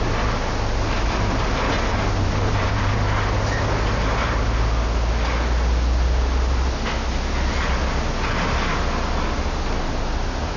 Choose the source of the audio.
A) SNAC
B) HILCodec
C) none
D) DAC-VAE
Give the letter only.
C